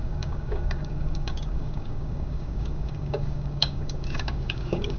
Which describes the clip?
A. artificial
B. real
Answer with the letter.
A